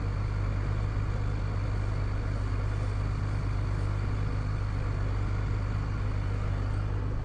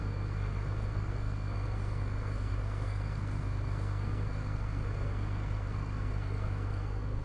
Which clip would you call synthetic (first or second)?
second